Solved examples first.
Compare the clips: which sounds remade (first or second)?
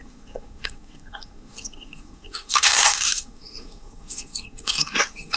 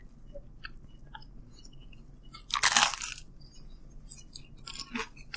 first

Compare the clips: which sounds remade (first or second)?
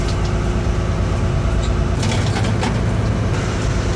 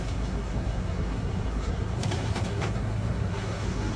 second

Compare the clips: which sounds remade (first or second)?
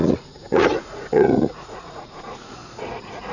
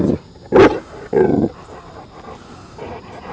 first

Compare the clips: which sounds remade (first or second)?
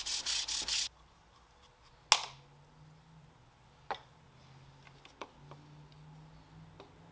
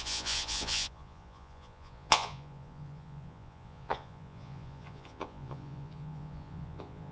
second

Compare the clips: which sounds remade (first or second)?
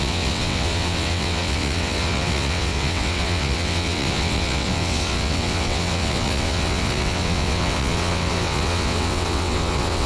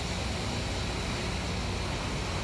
first